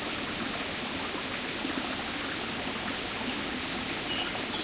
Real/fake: real